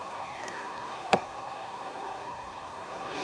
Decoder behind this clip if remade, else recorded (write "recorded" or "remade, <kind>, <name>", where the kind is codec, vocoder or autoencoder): remade, codec, SNAC